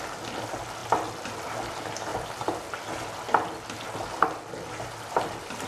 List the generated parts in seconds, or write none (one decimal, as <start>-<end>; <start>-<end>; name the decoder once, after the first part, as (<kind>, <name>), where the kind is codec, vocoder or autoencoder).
none